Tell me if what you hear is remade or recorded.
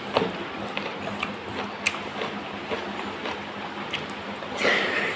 recorded